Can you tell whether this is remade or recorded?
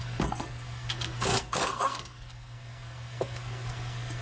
remade